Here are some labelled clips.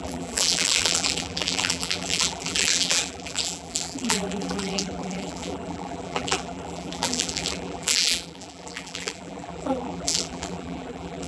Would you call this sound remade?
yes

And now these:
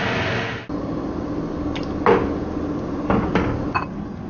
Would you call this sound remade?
no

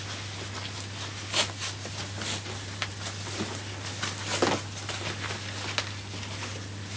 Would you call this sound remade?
no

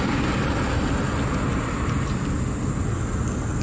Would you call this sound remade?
no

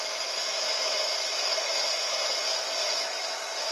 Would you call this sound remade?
yes